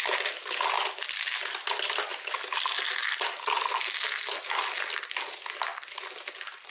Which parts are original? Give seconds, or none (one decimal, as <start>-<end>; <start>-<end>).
0.0-6.7